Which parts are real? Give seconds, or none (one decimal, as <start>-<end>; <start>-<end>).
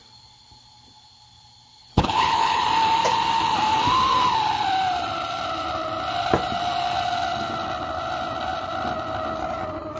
0.0-1.9; 2.6-10.0